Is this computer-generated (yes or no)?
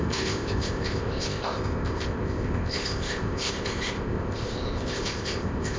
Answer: yes